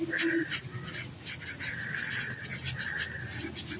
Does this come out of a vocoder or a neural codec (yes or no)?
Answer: no